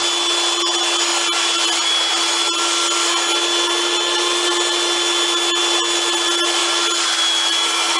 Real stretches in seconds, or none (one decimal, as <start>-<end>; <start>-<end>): 0.0-8.0